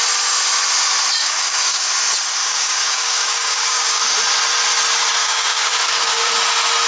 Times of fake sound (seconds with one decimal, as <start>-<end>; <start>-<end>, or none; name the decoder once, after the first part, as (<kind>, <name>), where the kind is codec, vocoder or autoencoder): 1.2-1.9 (codec, DAC); 2.4-4.0; 5.2-6.3